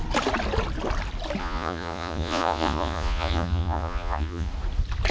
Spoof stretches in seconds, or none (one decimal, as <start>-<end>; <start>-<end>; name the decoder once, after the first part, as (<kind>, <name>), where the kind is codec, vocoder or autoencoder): 1.4-4.5 (vocoder, Vocos)